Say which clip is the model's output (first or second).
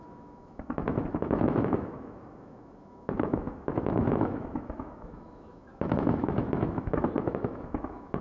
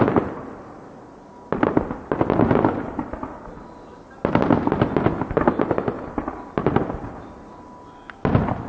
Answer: first